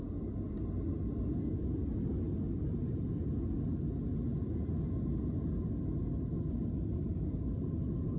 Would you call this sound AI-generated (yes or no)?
no